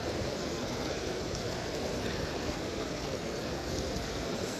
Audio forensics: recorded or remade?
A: remade